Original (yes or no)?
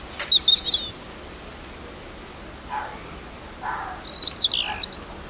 yes